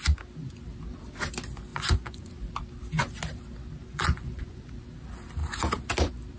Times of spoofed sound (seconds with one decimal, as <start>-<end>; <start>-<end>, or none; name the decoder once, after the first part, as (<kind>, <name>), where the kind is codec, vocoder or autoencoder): 1.7-2.3 (vocoder, Vocos); 3.8-4.6